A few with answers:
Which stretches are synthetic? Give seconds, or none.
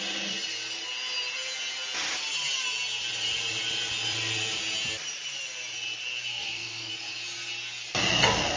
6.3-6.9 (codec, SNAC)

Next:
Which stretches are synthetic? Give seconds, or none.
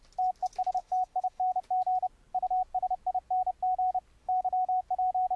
0.8-1.6 (autoencoder, DAC-VAE); 4.2-4.8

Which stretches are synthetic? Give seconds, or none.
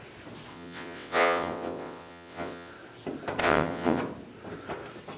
0.5-2.7 (vocoder, WaveNeXt); 3.4-4.0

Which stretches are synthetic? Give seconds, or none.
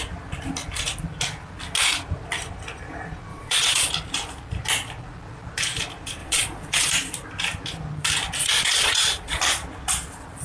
3.3-3.9 (vocoder, Vocos); 6.2-6.9; 8.4-9.4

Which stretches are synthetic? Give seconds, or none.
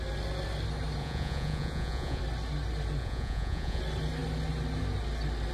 1.0-2.2 (vocoder, Vocos); 3.0-3.8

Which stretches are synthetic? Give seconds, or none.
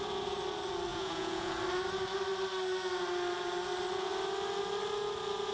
0.9-1.5 (vocoder, Vocos)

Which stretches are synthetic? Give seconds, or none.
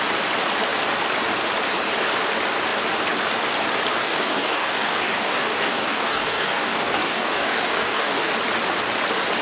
4.0-8.3 (codec, DAC)